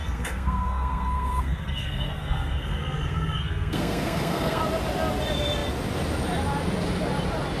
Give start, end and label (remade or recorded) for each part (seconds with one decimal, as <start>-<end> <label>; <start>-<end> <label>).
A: 0.0-4.6 remade; 4.6-7.6 recorded